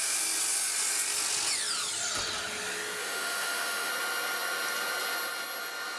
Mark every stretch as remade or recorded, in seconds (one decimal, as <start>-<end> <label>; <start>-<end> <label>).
0.0-3.0 recorded; 3.0-3.9 remade; 3.9-6.0 recorded